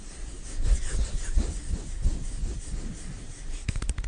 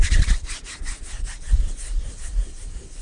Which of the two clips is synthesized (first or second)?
second